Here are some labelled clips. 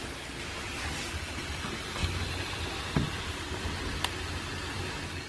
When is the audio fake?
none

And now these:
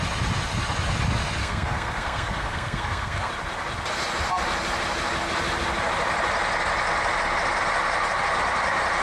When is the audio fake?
1.4-3.3 (codec, SNAC)

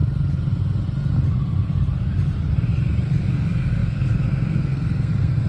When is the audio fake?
3.3-5.5 (codec, SNAC)

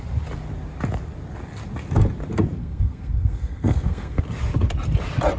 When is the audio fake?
2.6-4.2 (codec, SNAC)

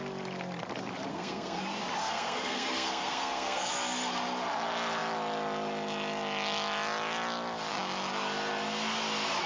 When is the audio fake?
1.1-1.6 (codec, SNAC); 2.0-3.7

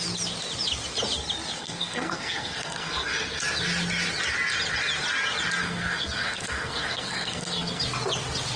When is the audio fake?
1.6-3.4 (codec, SNAC); 5.6-7.8

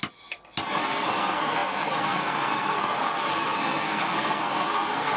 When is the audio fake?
0.8-5.2 (codec, SNAC)